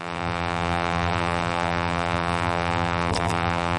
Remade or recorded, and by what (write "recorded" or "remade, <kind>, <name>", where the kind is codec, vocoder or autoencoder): remade, vocoder, BigVGAN v2